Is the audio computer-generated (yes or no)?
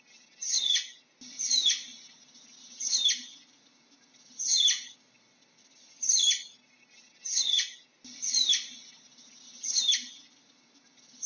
no